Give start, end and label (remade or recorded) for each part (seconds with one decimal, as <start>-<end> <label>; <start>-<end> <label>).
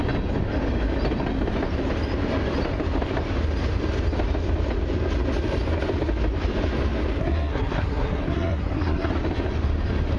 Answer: 0.0-7.2 recorded; 7.2-9.1 remade; 9.1-10.2 recorded